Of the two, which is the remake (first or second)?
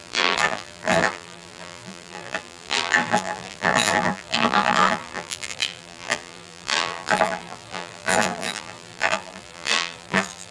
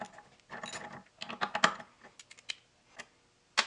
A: first